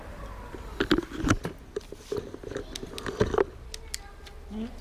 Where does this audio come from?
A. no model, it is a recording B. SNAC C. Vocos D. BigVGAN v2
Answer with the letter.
A